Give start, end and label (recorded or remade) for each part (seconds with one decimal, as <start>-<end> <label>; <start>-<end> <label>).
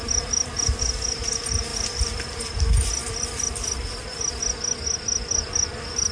0.0-6.1 recorded